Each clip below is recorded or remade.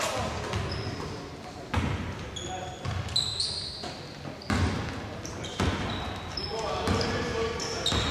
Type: recorded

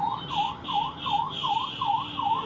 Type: recorded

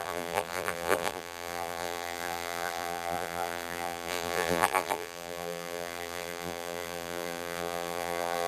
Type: remade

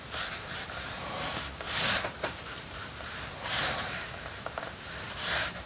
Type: remade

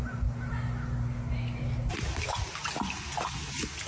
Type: recorded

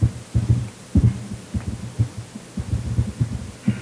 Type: recorded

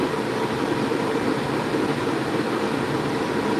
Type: recorded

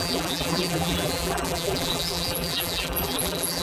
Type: remade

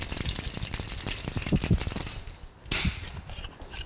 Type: recorded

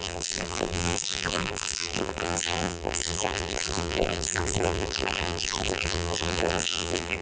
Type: remade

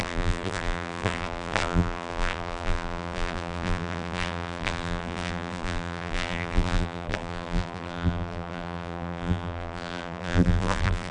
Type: remade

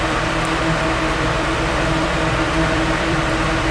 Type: remade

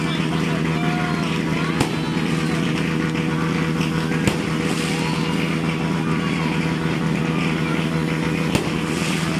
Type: recorded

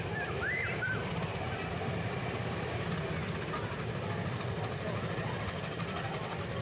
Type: remade